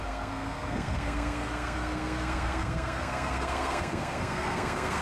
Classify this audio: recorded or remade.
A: remade